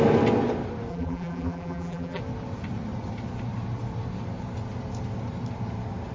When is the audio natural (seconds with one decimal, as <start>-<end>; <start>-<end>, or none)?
0.0-0.9; 2.2-6.1